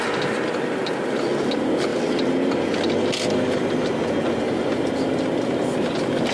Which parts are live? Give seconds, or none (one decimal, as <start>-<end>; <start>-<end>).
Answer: 0.0-6.3